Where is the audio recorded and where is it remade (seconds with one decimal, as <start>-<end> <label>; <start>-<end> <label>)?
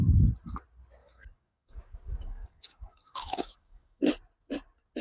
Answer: 0.0-1.0 recorded; 1.0-4.0 remade; 4.0-5.0 recorded